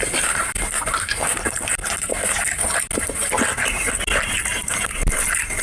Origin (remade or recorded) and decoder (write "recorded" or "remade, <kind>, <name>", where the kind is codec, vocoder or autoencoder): recorded